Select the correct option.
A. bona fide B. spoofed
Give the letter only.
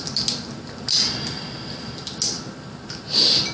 A